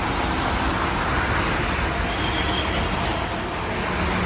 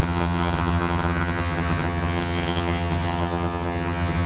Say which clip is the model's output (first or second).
second